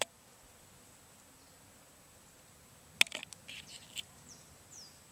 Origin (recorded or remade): recorded